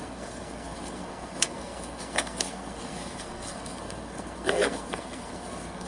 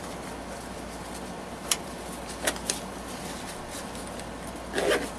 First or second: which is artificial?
first